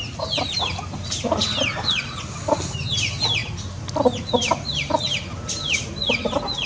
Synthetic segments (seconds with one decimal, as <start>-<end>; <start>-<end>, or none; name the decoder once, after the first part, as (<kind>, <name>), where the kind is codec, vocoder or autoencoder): none